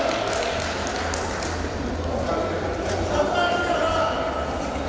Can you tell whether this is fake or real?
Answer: real